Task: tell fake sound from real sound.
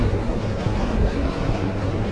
fake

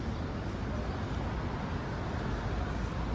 real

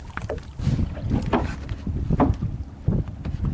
real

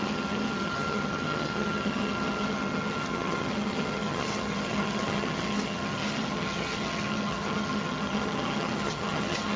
fake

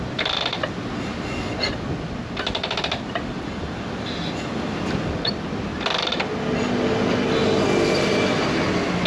real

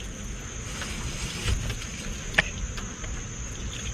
real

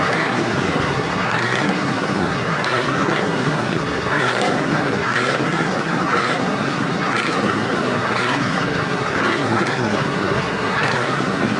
fake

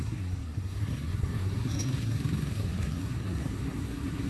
fake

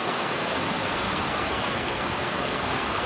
fake